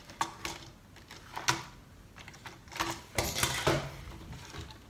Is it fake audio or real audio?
real